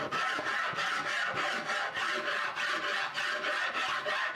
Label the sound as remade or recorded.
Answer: recorded